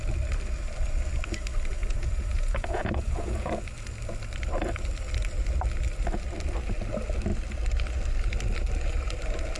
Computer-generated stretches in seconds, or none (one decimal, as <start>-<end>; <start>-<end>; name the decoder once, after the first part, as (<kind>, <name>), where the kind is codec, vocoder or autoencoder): 1.8-3.5 (vocoder, Vocos)